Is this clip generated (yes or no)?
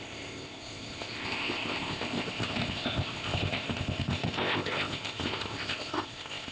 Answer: yes